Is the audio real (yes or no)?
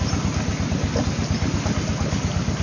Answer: yes